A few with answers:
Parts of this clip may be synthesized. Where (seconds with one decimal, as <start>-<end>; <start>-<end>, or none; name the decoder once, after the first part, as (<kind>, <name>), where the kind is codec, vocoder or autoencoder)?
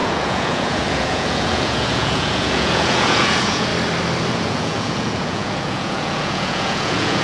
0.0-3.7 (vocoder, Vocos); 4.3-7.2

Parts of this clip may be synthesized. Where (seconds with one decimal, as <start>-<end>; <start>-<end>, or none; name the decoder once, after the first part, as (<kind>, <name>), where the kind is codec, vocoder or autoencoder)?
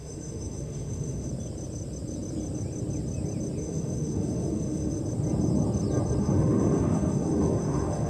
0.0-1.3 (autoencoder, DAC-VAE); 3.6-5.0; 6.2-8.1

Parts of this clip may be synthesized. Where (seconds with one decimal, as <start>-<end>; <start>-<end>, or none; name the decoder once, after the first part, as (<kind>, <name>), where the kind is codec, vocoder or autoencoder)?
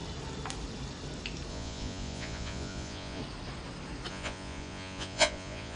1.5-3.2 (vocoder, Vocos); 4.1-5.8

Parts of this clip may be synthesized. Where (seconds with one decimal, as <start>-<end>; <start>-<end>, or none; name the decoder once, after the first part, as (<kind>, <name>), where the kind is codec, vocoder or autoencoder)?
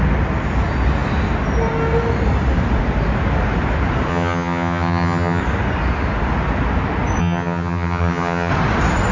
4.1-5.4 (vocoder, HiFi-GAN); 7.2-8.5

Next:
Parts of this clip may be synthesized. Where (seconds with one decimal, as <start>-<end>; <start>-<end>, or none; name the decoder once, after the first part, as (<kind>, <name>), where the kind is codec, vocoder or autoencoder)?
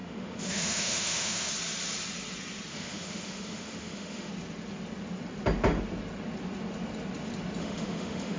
0.0-1.5 (autoencoder, DAC-VAE); 2.7-4.3; 7.6-8.4